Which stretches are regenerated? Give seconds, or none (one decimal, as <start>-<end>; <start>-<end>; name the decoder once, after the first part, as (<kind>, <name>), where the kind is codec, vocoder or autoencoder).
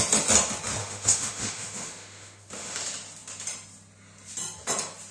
0.8-2.8 (autoencoder, DAC-VAE)